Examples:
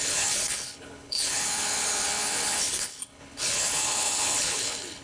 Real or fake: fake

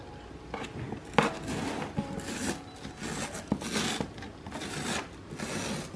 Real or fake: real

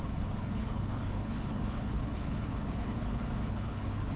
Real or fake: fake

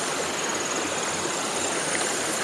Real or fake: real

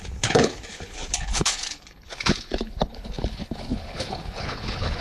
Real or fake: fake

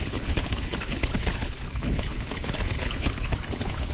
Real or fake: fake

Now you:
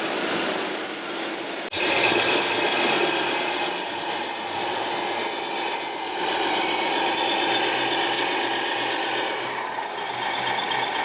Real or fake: real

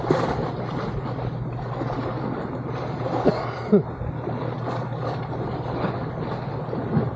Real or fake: real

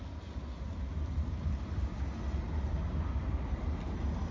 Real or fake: real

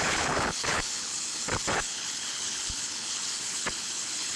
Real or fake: fake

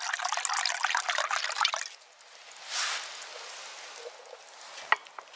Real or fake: real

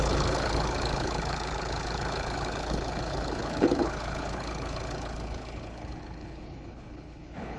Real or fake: fake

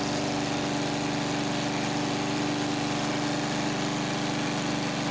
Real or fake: real